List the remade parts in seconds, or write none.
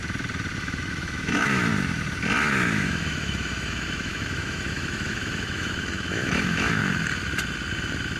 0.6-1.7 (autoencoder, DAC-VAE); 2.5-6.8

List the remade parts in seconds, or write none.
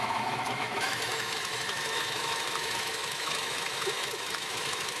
0.0-5.0 (autoencoder, DAC-VAE)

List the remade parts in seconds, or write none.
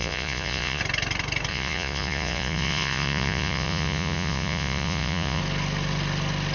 0.0-0.8 (vocoder, Vocos); 1.5-5.4